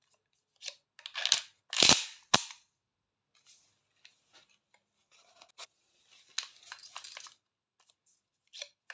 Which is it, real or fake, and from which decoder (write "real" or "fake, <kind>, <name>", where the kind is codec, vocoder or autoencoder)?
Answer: real